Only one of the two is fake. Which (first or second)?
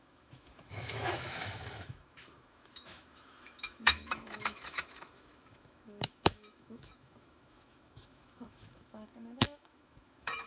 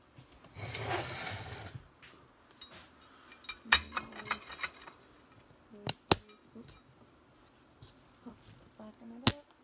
first